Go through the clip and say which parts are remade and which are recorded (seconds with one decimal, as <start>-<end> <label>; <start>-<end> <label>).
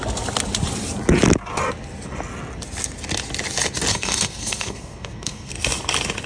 0.0-3.9 recorded; 3.9-5.5 remade; 5.5-6.3 recorded